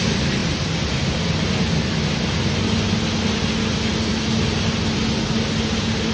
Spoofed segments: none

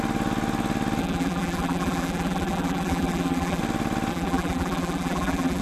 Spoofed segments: 1.0-3.6 (vocoder, BigVGAN v2); 4.1-5.6

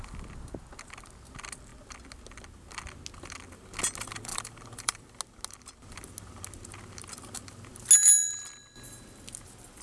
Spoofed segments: 4.3-5.2 (vocoder, BigVGAN v2)

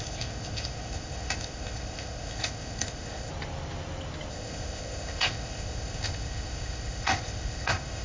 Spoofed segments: 0.0-3.3 (codec, ZipCodec); 4.3-8.0

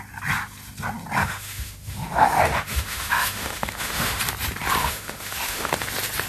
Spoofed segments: 1.2-4.2 (autoencoder, DAC-VAE); 4.8-5.7

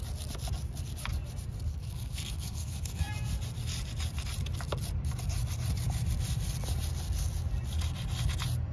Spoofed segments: 1.7-3.1 (codec, SNAC)

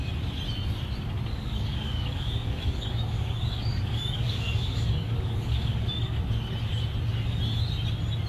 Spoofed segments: 1.3-6.2 (codec, DAC)

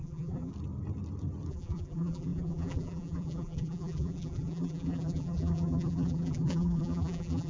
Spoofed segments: 0.0-0.5 (vocoder, BigVGAN v2); 1.5-7.5